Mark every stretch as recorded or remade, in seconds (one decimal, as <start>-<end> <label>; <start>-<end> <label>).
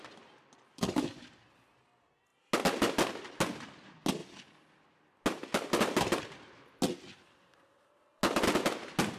0.0-9.2 recorded